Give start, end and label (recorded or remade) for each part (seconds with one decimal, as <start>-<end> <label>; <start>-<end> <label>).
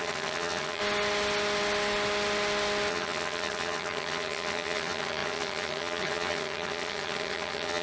0.0-0.8 remade; 0.8-2.9 recorded; 2.9-7.8 remade